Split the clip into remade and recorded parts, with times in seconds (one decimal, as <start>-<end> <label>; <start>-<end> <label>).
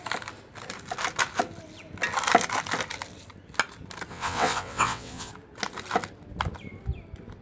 0.0-4.1 recorded; 4.1-5.3 remade; 5.3-7.4 recorded